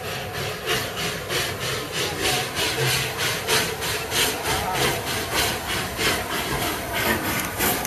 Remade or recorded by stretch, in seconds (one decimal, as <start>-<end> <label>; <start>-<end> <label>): 0.0-7.9 recorded